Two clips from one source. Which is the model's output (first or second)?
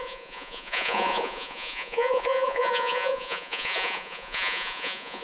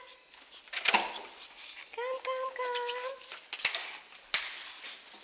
first